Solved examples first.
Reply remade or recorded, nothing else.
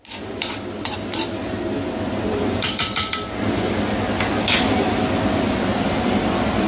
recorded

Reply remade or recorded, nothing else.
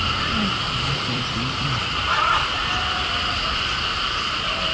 remade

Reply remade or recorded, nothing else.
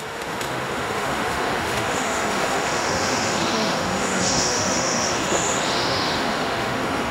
remade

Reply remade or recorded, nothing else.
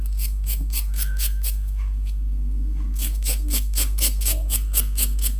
remade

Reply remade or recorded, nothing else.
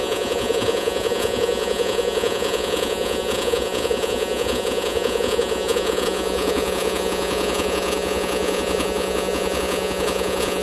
remade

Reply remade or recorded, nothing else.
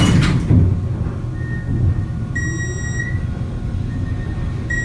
recorded